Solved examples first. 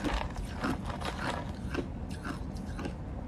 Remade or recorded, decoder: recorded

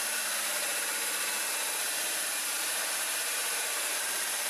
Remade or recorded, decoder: remade, vocoder, BigVGAN v2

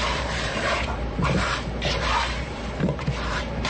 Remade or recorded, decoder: remade, vocoder, BigVGAN v2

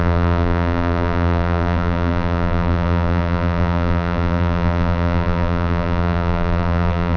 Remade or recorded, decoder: remade, vocoder, BigVGAN v2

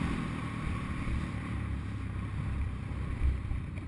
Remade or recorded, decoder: remade, vocoder, BigVGAN v2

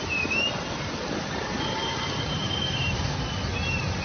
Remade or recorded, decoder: recorded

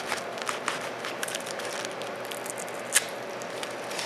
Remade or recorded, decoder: recorded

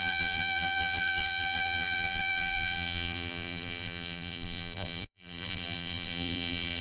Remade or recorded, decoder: remade, vocoder, BigVGAN v2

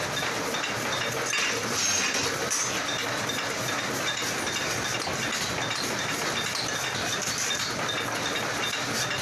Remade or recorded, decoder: recorded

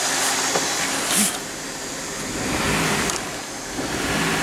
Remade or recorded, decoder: recorded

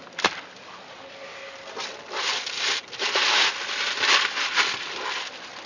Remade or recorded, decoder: remade, vocoder, BigVGAN v2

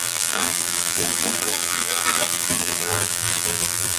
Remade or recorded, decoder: remade, vocoder, BigVGAN v2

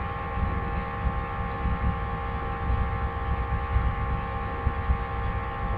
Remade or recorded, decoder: recorded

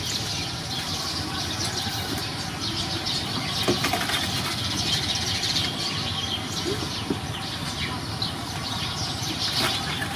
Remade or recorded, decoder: recorded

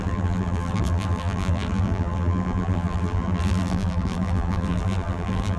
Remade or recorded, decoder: remade, vocoder, BigVGAN v2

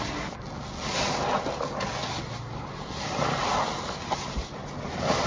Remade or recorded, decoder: recorded